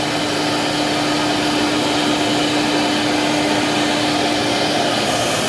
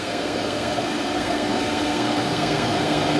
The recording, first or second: first